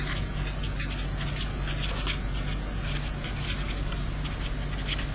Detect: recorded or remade recorded